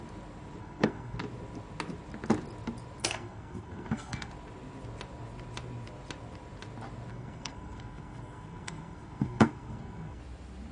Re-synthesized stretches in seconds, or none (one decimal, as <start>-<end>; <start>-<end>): 0.6-1.2; 3.0-4.3; 7.1-10.2